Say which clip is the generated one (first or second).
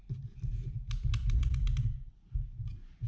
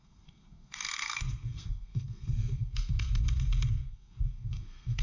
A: second